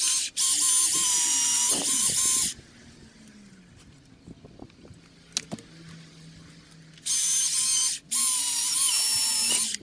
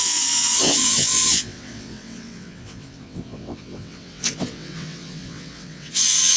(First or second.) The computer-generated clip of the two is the second